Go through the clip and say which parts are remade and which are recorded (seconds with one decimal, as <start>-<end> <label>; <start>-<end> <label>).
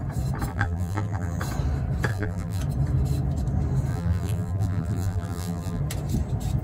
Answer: 0.0-0.5 recorded; 0.5-1.4 remade; 1.4-2.1 recorded; 2.1-2.6 remade; 2.6-3.9 recorded; 3.9-5.8 remade; 5.8-6.6 recorded